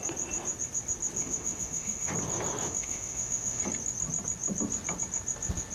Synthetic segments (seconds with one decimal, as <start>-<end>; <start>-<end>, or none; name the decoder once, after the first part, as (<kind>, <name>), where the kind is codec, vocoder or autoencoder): 1.2-2.1 (autoencoder, DAC-VAE); 2.6-3.6